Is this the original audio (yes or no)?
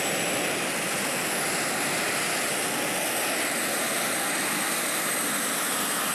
yes